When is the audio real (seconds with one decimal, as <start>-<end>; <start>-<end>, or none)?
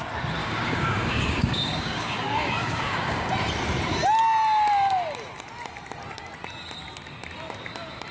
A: 0.0-0.4; 3.3-8.1